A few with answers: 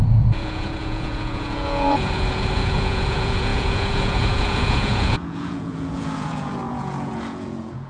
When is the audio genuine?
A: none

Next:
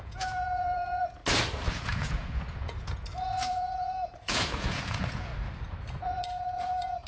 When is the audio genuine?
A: 1.2-1.7; 5.3-5.8

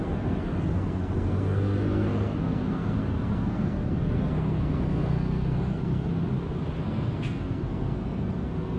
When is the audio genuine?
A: 6.1-6.8